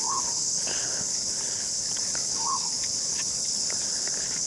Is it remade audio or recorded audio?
remade